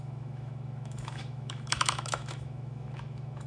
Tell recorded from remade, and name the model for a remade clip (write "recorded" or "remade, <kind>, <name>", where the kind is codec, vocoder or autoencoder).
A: remade, autoencoder, DAC-VAE